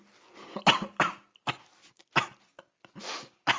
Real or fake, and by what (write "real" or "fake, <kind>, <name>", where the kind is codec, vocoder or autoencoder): real